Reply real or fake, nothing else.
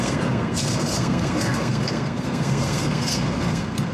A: fake